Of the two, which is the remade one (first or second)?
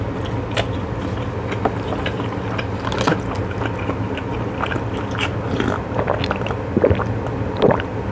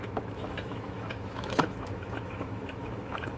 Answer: second